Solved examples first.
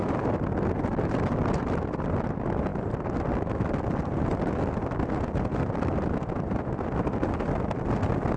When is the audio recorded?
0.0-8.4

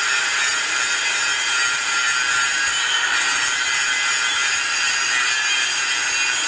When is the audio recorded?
0.0-0.5; 1.0-4.4; 6.1-6.5